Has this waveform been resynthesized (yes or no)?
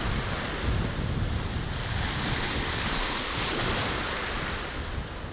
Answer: no